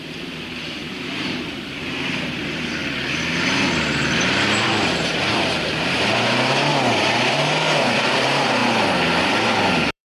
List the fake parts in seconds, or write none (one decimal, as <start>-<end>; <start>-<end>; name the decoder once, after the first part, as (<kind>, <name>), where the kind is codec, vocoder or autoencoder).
0.0-2.8 (vocoder, BigVGAN v2); 4.2-6.7; 7.3-8.6; 9.3-10.1